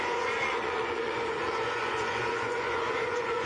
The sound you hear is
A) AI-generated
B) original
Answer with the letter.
A